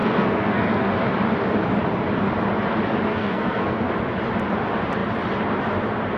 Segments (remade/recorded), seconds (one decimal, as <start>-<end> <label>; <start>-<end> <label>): 0.0-0.9 remade; 0.9-3.1 recorded; 3.1-3.9 remade; 3.9-6.2 recorded